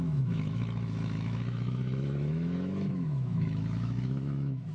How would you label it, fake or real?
fake